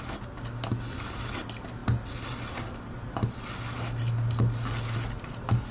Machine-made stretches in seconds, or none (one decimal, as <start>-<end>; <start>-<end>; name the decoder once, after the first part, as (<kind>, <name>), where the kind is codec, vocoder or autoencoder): none